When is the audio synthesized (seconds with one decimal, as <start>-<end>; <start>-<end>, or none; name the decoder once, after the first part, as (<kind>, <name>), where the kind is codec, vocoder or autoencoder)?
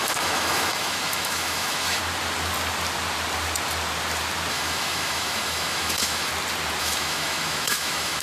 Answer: 0.0-2.0 (autoencoder, DAC-VAE); 4.5-6.3; 6.8-8.2